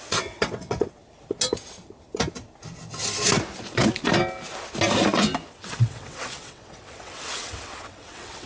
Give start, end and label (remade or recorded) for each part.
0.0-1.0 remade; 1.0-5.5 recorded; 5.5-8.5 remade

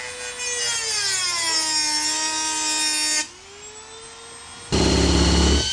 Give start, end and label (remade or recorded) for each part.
0.0-5.7 recorded

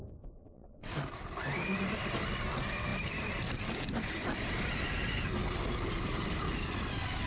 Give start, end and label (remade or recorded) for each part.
0.0-0.4 recorded; 0.4-0.9 remade; 0.9-7.3 recorded

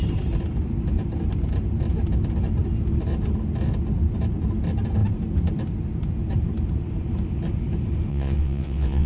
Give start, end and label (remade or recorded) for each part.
0.0-8.1 recorded; 8.1-9.1 remade